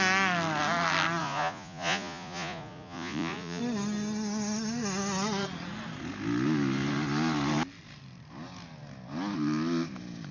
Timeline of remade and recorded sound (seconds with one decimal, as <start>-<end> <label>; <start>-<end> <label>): 0.0-1.2 recorded; 1.2-3.6 remade; 3.6-10.3 recorded